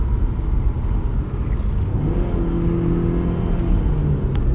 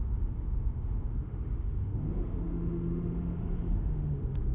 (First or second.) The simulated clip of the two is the second